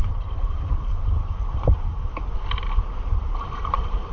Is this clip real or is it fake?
real